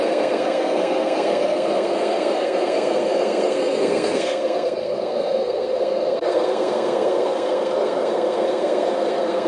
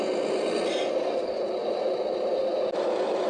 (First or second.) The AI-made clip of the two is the first